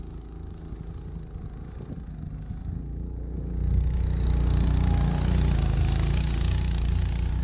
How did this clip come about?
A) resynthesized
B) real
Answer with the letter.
B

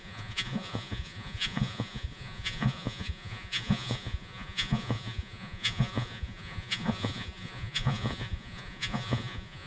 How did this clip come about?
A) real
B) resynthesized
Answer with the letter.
B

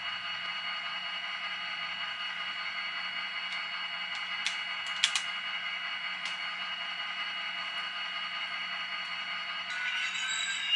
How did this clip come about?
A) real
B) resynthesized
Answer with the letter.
A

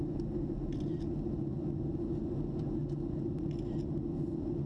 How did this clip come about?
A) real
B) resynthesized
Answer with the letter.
A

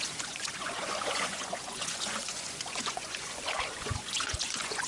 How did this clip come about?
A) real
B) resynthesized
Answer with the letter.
B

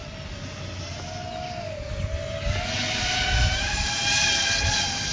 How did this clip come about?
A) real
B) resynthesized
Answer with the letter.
A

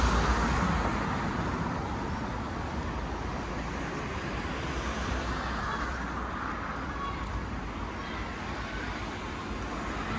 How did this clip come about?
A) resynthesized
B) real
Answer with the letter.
B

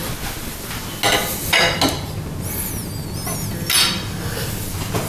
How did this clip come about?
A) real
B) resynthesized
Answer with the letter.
A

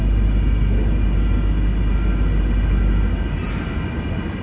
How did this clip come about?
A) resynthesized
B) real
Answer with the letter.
B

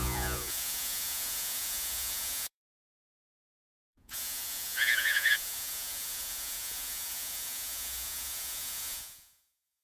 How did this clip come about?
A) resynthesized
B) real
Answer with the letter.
A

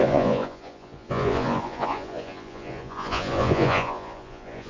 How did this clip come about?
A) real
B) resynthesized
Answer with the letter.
B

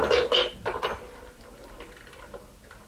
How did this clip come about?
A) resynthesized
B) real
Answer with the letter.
B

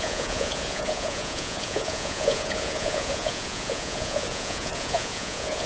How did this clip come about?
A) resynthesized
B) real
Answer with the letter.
A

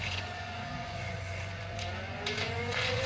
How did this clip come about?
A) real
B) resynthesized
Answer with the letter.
B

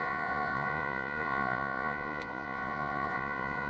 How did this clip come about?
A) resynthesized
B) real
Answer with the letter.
A